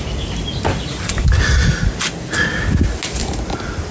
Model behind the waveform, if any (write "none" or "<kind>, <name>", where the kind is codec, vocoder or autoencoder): none